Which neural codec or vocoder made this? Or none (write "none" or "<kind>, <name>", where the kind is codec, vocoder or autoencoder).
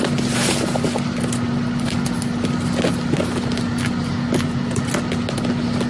none